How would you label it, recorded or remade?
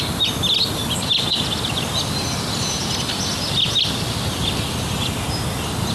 recorded